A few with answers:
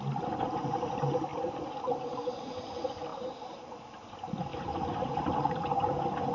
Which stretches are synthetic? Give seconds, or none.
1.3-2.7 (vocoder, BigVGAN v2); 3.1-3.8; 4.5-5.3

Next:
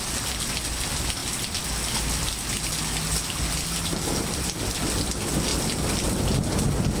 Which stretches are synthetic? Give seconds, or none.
none

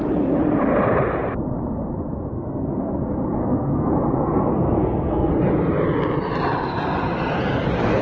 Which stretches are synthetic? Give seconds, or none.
2.3-2.8 (codec, SNAC); 3.4-3.9; 4.5-5.3